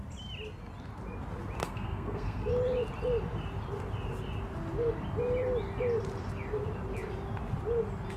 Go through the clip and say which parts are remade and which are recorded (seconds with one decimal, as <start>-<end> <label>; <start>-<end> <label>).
0.0-1.6 recorded; 1.6-2.5 remade; 2.5-8.2 recorded

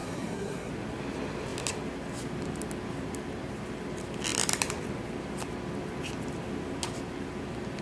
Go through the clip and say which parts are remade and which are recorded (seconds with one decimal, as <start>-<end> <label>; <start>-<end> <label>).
0.0-0.7 remade; 0.7-7.8 recorded

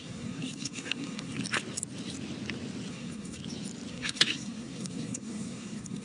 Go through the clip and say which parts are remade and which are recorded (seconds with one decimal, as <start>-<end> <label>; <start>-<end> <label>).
0.0-1.4 remade; 1.4-2.9 recorded; 2.9-3.4 remade; 3.4-3.9 recorded; 3.9-6.0 remade

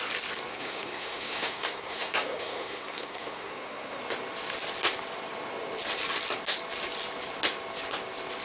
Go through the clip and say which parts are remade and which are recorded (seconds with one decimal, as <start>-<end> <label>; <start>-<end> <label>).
0.0-0.5 recorded; 0.5-4.0 remade; 4.0-8.4 recorded

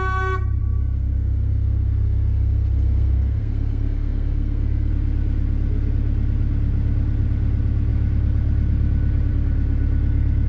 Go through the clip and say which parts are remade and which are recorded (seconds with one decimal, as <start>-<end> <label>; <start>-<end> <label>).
0.0-0.6 recorded; 0.6-4.9 remade; 4.9-10.5 recorded

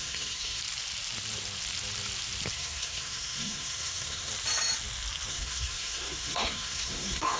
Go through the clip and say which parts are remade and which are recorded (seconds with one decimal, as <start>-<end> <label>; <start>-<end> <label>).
0.0-0.6 remade; 0.6-2.5 recorded; 2.5-4.3 remade; 4.3-5.3 recorded; 5.3-7.4 remade